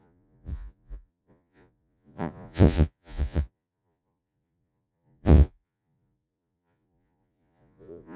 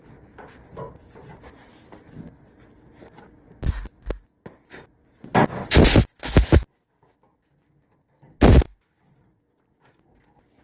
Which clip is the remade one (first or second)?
first